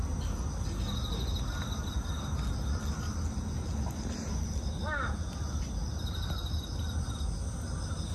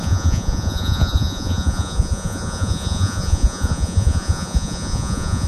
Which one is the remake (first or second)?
second